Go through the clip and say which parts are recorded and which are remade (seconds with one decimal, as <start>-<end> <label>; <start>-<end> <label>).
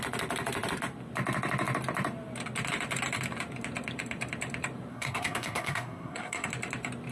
0.0-4.9 recorded; 4.9-6.5 remade; 6.5-7.1 recorded